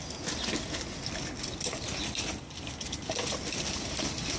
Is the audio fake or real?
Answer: real